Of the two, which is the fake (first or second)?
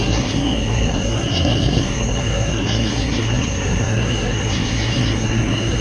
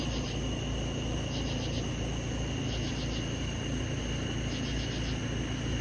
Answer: first